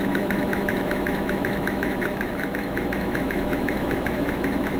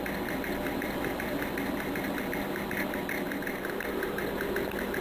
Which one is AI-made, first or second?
first